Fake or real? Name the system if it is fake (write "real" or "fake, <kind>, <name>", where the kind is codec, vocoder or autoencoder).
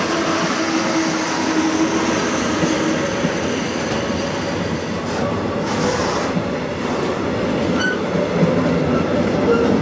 real